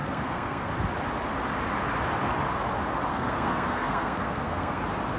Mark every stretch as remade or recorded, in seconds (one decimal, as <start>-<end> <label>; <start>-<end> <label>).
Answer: 0.0-0.7 remade; 0.7-3.1 recorded; 3.1-4.8 remade; 4.8-5.2 recorded